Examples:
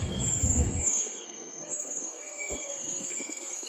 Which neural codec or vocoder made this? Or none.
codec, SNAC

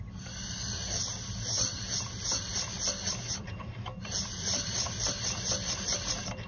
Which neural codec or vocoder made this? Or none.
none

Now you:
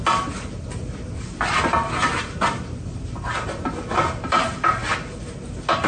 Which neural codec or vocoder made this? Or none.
none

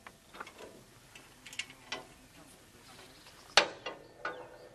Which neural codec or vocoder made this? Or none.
none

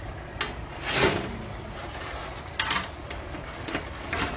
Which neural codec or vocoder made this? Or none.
none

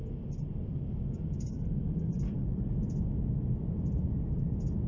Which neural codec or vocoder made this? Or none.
none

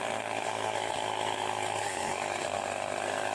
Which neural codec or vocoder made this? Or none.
codec, SNAC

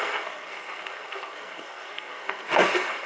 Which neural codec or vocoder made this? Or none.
codec, SNAC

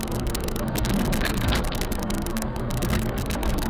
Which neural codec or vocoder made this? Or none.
codec, SNAC